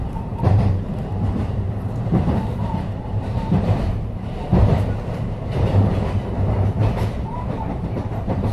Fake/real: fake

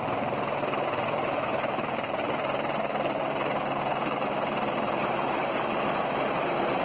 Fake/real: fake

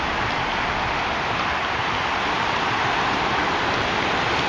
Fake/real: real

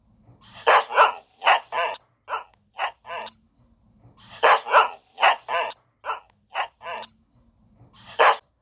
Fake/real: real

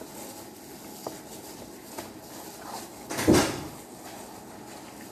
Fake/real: real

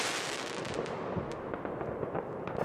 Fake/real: real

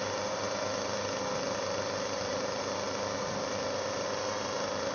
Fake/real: real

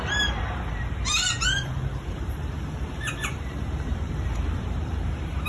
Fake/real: fake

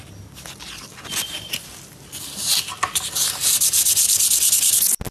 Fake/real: real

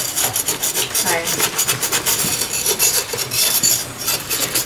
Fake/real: real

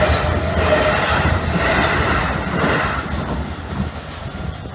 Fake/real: real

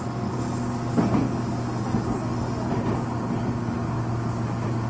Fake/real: real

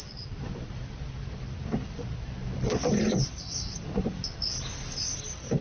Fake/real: fake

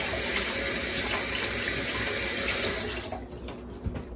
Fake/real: real